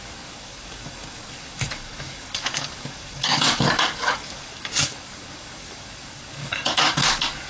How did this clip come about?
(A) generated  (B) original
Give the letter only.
A